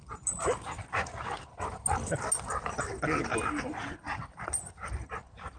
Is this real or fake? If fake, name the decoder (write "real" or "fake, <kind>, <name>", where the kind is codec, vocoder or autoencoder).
real